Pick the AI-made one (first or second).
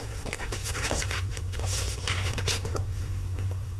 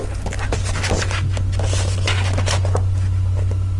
first